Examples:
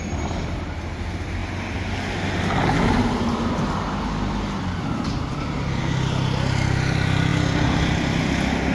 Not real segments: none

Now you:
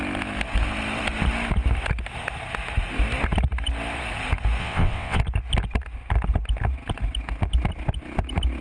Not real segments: 4.6-5.2 (vocoder, WaveNeXt)

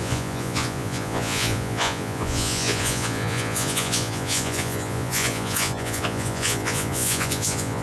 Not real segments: 0.0-7.8 (vocoder, Vocos)

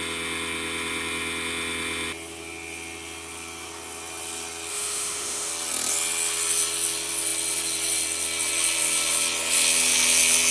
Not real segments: 4.7-5.5 (autoencoder, DAC-VAE)

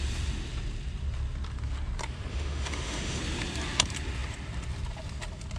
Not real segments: 2.3-3.2 (autoencoder, DAC-VAE)

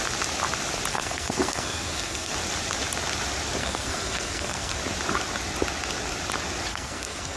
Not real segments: 0.9-2.3 (codec, SNAC); 3.6-4.8; 6.7-7.4

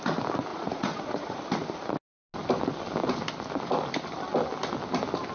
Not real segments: 0.5-1.4 (vocoder, Vocos)

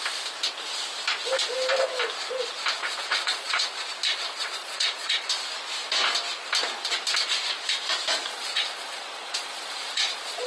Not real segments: 2.8-3.7 (vocoder, Vocos); 4.4-5.3; 8.3-10.5